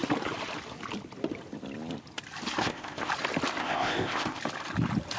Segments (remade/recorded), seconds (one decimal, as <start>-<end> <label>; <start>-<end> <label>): 0.0-2.6 recorded; 2.6-3.1 remade; 3.1-3.6 recorded; 3.6-4.4 remade; 4.4-5.2 recorded